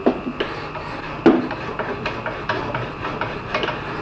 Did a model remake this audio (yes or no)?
yes